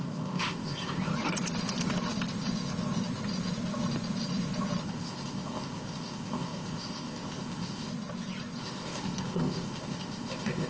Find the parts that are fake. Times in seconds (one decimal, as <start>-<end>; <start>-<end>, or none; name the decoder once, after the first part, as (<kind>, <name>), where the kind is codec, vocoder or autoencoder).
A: 0.0-1.1 (codec, ZipCodec); 4.8-7.9; 8.6-10.7